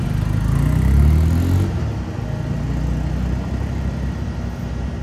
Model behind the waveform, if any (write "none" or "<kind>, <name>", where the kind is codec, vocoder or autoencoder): none